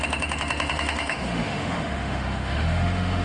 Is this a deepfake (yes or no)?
yes